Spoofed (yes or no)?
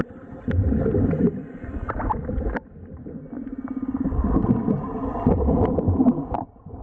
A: no